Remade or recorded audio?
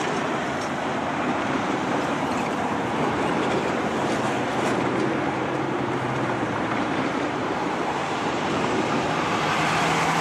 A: remade